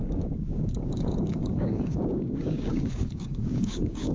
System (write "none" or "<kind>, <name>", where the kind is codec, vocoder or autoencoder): codec, DAC